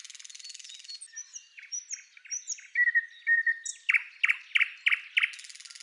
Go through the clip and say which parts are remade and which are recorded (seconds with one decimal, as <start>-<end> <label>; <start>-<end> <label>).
0.0-5.8 recorded